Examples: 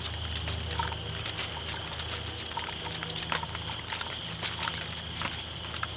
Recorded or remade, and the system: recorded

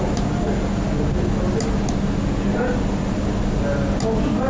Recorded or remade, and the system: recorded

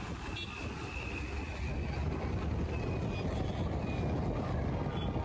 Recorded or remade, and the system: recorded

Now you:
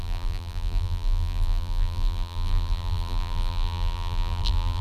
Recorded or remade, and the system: remade, vocoder, BigVGAN v2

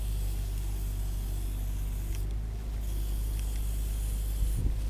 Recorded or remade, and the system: recorded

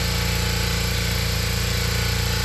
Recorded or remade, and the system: remade, vocoder, BigVGAN v2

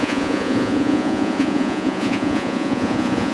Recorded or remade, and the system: remade, vocoder, Vocos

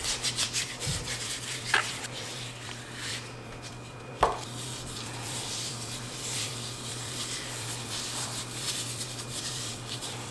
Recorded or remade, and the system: remade, vocoder, BigVGAN v2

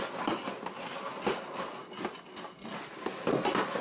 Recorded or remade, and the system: recorded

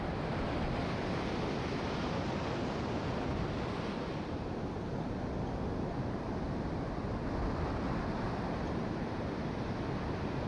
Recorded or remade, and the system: recorded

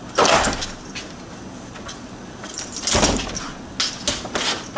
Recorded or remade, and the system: recorded